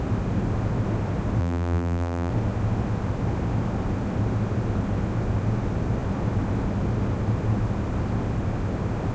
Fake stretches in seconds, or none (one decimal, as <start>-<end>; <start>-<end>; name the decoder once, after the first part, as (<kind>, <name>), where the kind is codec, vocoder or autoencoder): 1.4-2.3 (vocoder, BigVGAN v2)